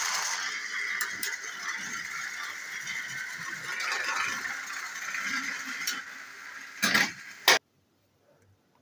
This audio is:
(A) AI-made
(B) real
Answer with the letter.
B